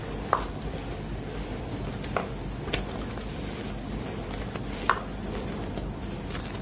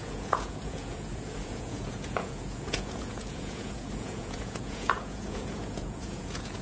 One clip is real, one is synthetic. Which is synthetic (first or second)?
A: second